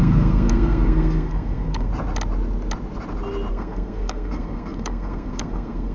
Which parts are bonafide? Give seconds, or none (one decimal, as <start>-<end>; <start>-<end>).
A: 1.9-3.5